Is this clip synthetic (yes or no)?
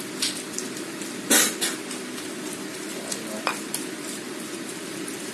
no